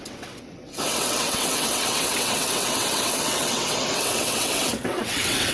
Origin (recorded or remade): remade